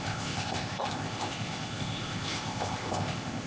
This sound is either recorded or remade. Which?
remade